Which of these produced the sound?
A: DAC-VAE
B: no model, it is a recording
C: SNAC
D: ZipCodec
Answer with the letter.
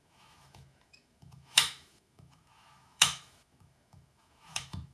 A